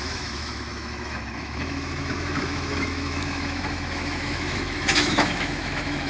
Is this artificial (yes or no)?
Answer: yes